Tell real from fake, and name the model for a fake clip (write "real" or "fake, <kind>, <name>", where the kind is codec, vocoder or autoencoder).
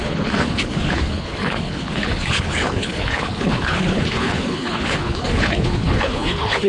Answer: fake, codec, HILCodec